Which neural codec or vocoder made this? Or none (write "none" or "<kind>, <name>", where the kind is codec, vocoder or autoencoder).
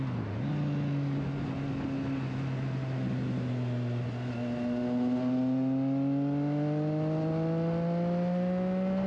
none